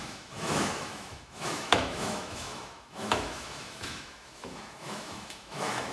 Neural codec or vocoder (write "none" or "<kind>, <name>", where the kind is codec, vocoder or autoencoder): autoencoder, DAC-VAE